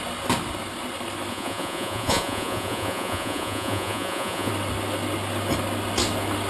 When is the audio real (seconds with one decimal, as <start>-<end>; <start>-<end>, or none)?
0.0-1.3; 4.5-6.5